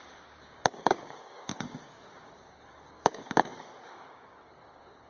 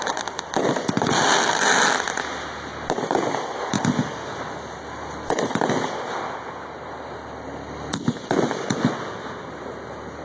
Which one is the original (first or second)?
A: second